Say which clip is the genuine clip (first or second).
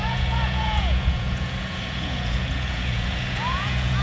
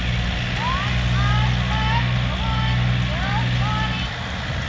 second